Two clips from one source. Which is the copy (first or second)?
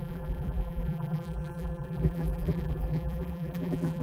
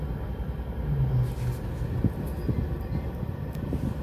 first